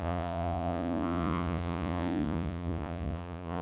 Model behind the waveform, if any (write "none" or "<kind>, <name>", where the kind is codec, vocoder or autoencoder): vocoder, Vocos